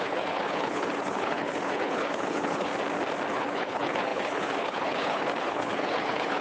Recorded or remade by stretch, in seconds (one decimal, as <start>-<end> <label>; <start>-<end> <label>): 0.0-2.7 remade; 2.7-3.3 recorded; 3.3-6.4 remade

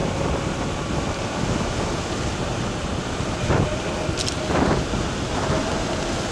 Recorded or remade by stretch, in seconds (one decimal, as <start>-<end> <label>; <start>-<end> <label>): 0.0-3.8 remade; 3.8-6.3 recorded

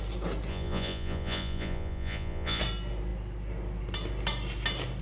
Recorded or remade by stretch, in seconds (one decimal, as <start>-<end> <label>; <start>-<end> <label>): 0.0-0.5 recorded; 0.5-2.6 remade; 2.6-5.0 recorded

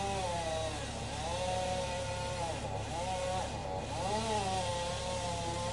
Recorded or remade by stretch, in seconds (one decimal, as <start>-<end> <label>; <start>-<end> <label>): 0.0-5.7 recorded

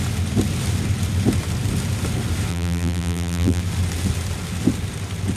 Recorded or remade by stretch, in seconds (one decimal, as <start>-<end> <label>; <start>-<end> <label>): 0.0-2.5 recorded; 2.5-3.6 remade; 3.6-5.4 recorded

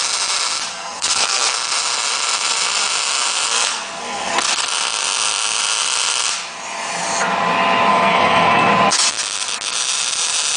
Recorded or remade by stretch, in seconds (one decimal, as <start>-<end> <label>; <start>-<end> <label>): 0.0-0.7 recorded; 0.7-1.5 remade; 1.5-3.5 recorded; 3.5-4.3 remade; 4.3-7.9 recorded; 7.9-8.7 remade; 8.7-10.6 recorded